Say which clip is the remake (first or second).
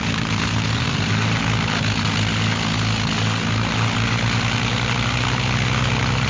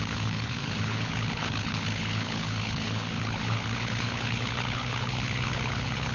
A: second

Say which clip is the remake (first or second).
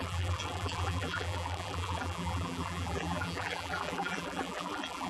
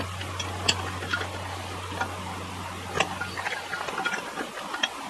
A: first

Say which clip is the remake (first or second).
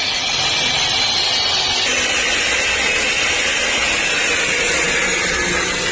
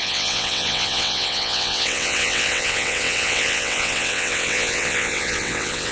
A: second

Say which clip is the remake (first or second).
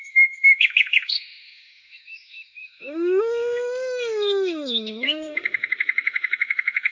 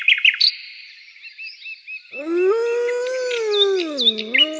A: first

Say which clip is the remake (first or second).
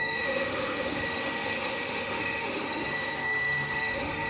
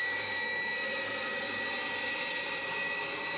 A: first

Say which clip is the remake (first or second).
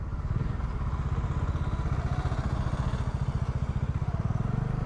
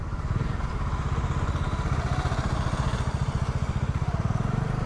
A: second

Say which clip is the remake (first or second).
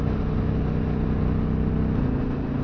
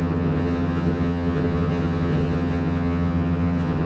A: second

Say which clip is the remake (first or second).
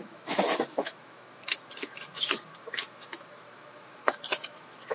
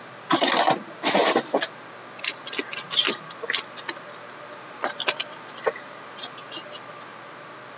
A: first